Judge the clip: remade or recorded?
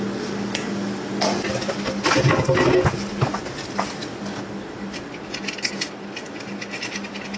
recorded